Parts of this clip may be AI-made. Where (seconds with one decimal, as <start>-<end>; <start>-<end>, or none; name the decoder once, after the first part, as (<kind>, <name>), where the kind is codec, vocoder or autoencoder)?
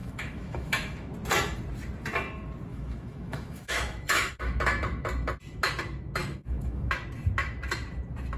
0.0-1.1 (autoencoder, DAC-VAE); 2.7-4.6; 6.2-6.9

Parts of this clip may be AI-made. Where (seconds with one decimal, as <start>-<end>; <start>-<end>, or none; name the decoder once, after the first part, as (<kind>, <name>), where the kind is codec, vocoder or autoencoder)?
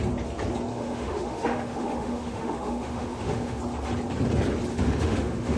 0.7-3.6 (autoencoder, DAC-VAE); 4.7-5.6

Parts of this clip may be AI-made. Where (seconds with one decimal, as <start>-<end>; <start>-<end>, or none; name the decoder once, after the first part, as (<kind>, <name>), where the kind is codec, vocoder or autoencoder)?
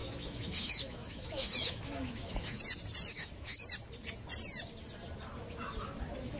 0.0-2.6 (autoencoder, DAC-VAE); 3.1-3.6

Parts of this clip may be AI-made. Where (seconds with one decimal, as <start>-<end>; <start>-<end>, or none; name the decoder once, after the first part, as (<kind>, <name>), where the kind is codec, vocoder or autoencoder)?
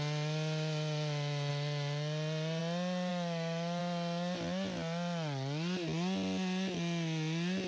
3.1-3.8 (autoencoder, DAC-VAE)